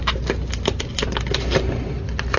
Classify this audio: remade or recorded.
recorded